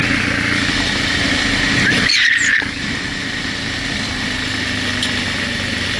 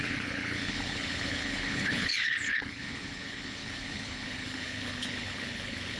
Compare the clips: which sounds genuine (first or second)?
first